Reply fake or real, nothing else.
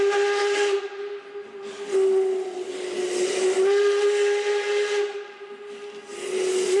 real